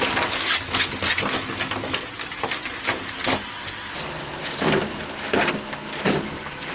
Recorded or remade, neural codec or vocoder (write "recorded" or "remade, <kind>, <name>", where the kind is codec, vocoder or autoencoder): recorded